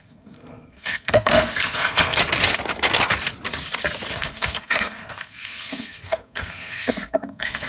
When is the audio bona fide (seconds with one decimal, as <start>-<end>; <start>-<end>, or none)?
2.2-4.1